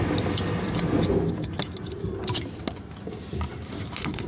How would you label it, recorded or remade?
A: recorded